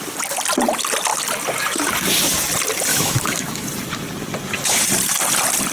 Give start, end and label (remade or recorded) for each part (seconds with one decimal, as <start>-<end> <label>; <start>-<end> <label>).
0.0-2.9 recorded; 2.9-3.7 remade; 3.7-5.7 recorded